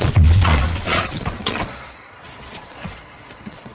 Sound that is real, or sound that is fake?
fake